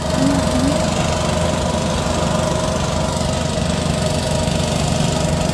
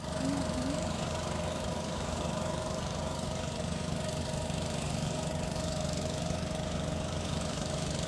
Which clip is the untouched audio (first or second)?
first